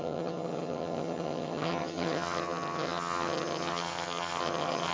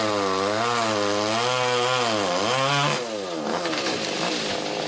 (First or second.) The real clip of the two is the second